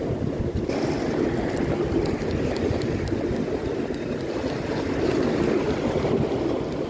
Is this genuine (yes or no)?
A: yes